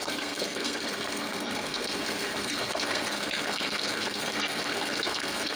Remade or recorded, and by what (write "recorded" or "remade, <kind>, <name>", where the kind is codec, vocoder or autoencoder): remade, codec, SNAC